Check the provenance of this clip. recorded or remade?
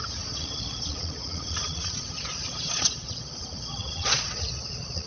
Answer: remade